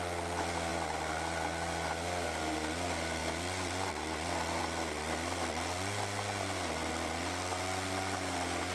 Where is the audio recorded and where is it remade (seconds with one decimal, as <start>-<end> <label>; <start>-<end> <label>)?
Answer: 0.0-8.7 recorded